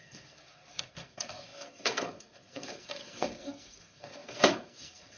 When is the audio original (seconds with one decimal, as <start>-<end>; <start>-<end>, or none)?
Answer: none